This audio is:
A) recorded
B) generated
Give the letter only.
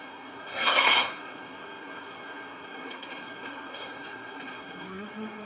B